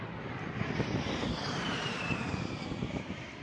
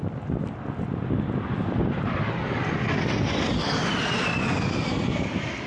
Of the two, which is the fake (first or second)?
first